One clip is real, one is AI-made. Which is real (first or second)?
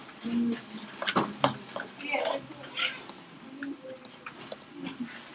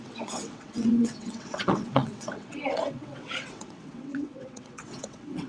first